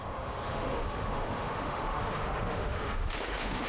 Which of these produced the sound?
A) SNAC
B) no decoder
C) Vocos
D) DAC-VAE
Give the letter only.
D